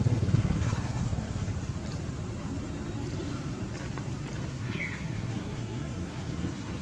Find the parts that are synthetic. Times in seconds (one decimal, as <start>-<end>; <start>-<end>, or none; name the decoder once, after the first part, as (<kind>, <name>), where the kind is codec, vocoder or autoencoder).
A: 0.0-1.5 (codec, SNAC); 4.5-6.8